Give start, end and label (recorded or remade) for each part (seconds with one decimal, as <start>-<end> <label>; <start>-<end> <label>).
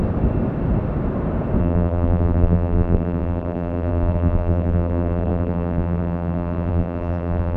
0.0-1.6 recorded; 1.6-7.6 remade